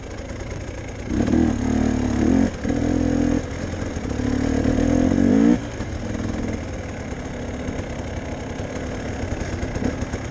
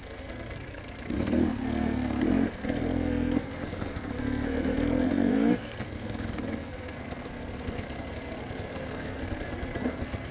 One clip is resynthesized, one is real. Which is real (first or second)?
first